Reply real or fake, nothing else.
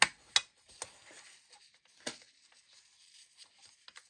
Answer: real